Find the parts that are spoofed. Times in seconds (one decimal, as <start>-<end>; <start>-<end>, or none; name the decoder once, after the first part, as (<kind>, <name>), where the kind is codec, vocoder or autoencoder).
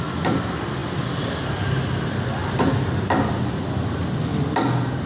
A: none